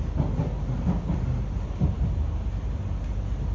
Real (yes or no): yes